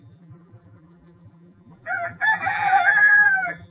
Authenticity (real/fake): fake